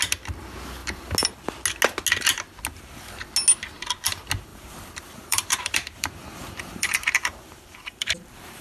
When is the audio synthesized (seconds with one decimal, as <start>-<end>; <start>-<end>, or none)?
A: 4.5-8.6